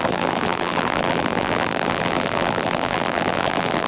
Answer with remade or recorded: remade